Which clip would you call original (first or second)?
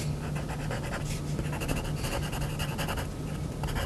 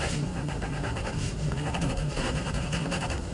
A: first